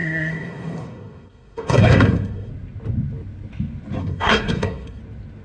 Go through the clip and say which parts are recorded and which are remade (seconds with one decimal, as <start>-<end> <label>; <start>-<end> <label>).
0.0-2.5 remade; 2.5-4.0 recorded; 4.0-5.0 remade; 5.0-5.4 recorded